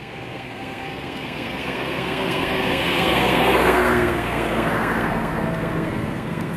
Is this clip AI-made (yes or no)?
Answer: yes